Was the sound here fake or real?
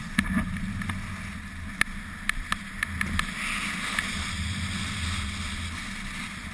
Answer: real